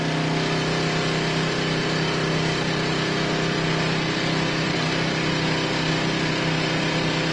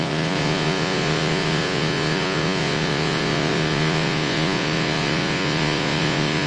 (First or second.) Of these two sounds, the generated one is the second